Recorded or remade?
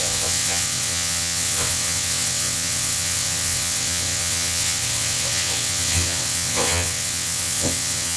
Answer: remade